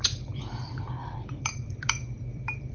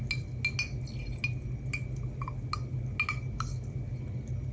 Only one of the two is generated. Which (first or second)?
first